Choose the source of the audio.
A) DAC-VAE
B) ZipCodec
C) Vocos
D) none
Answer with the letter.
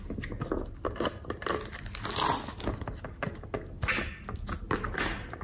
D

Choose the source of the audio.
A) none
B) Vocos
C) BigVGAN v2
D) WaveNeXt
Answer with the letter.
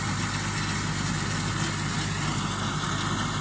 A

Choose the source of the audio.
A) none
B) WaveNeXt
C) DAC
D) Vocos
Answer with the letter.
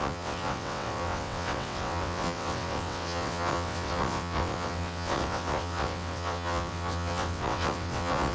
B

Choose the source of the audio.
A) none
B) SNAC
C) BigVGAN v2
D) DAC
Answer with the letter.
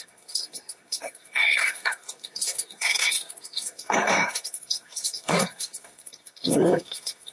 B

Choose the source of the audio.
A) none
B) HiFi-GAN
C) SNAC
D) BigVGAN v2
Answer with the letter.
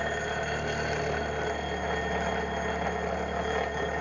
A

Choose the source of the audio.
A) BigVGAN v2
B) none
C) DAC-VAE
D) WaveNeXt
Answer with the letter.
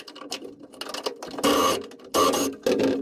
B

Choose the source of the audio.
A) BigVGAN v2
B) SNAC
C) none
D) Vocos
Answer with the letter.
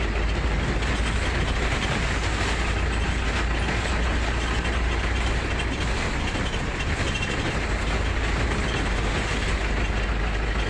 C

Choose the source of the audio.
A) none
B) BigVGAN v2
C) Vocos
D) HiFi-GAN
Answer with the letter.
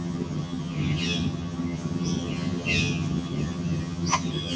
D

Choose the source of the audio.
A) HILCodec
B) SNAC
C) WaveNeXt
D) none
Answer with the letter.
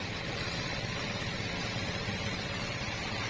C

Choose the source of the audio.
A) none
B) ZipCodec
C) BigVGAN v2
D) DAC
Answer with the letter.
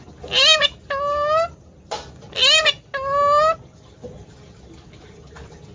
A